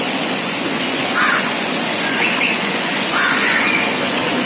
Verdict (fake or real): fake